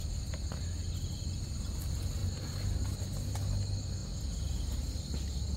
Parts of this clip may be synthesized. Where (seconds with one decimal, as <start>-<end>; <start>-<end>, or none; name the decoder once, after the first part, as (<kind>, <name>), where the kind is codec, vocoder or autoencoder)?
none